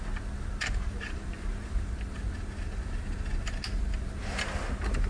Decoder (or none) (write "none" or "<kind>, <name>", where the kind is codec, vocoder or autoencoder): none